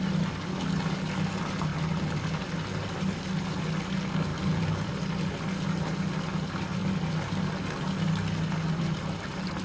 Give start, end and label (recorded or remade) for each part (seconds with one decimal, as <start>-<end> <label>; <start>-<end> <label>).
0.0-4.3 recorded; 4.3-4.9 remade; 4.9-9.6 recorded